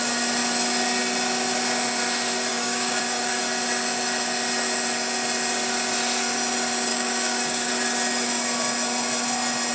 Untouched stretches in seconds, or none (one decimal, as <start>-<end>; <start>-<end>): 0.0-2.5; 3.4-6.9; 7.7-9.7